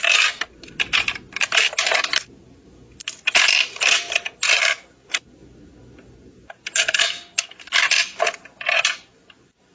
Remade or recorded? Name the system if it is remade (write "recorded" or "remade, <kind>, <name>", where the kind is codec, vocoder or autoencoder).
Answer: recorded